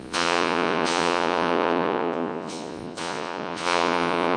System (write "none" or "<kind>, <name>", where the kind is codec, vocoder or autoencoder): vocoder, Vocos